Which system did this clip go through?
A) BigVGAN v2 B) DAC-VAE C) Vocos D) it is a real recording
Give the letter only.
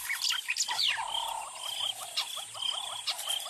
D